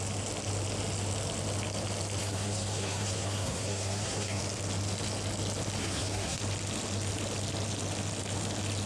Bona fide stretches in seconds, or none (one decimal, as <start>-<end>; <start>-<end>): 0.0-2.2; 4.4-5.8; 6.4-8.9